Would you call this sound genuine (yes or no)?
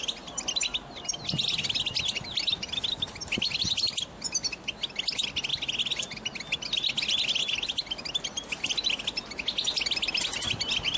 yes